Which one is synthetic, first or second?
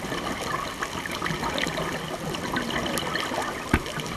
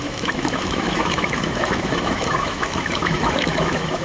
second